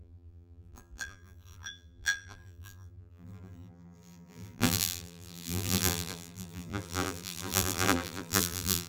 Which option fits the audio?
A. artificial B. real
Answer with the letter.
A